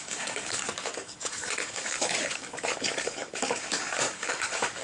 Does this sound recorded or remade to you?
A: remade